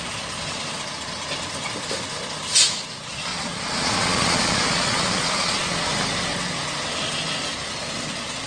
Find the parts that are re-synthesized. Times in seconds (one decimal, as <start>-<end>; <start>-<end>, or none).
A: 3.3-5.9